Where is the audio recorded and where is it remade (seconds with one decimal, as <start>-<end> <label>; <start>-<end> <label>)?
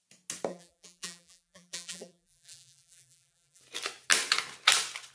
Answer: 0.0-0.5 recorded; 0.5-3.6 remade; 3.6-5.1 recorded